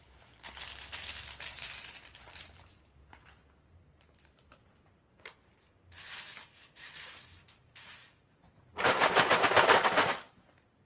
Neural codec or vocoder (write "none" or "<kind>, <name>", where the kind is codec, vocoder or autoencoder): vocoder, BigVGAN v2